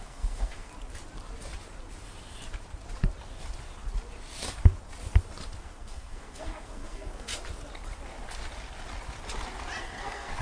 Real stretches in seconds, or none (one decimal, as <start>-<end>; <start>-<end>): 0.7-5.6; 7.3-9.8